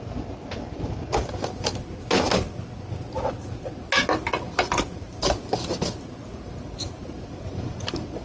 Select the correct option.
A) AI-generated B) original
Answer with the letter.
B